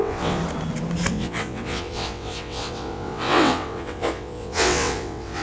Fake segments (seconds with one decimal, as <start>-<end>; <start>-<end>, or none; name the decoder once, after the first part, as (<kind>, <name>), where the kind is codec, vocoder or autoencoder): 0.0-0.4 (vocoder, WaveNeXt); 1.1-5.4